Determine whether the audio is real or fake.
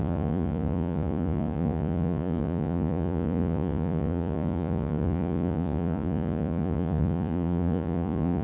fake